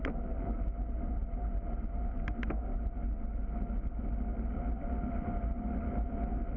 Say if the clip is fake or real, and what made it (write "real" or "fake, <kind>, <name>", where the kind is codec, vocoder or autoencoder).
real